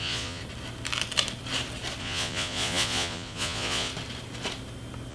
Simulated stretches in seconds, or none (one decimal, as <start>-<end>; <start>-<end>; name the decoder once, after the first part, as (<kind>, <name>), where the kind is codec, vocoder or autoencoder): 0.0-0.4 (vocoder, Vocos); 2.0-3.9